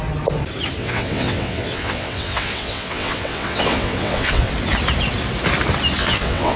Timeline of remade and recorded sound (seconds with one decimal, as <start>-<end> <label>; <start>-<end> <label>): 0.0-0.8 recorded; 0.8-4.5 remade; 4.5-6.0 recorded; 6.0-6.6 remade